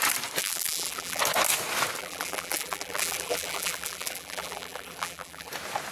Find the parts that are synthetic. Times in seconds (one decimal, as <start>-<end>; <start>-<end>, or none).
0.4-1.2; 2.0-5.5